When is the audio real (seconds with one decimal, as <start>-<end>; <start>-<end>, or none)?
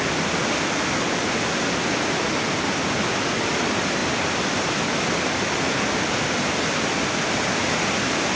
0.0-8.4